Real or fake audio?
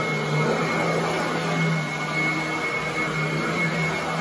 real